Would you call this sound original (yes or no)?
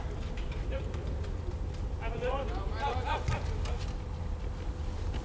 yes